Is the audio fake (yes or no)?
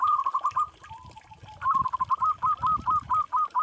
no